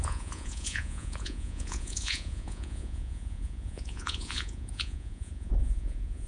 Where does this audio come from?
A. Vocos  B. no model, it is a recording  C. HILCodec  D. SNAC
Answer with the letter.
A